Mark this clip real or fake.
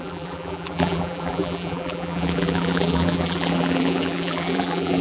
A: fake